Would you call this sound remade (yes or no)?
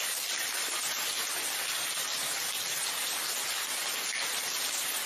no